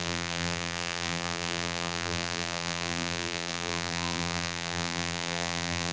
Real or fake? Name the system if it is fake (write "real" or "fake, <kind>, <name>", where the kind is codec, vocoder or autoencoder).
fake, vocoder, BigVGAN v2